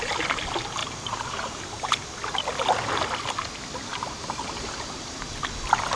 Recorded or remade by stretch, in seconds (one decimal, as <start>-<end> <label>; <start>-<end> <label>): 0.0-0.8 recorded; 0.8-2.1 remade; 2.1-3.9 recorded; 3.9-5.3 remade; 5.3-6.0 recorded